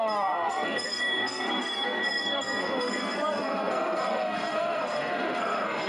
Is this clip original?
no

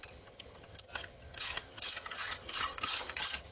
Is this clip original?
no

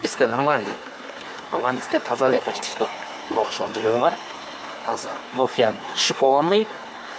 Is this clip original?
no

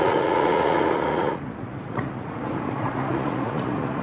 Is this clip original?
no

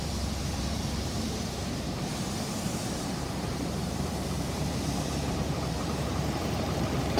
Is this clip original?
no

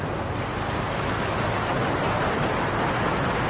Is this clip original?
yes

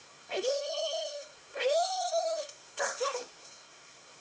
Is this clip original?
no